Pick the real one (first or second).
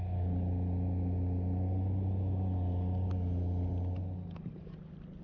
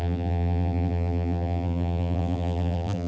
first